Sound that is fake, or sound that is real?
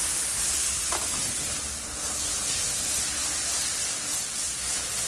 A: real